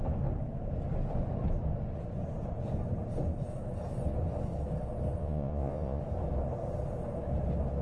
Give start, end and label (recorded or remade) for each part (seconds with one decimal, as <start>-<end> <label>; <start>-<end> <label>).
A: 0.0-5.2 recorded; 5.2-6.0 remade; 6.0-7.8 recorded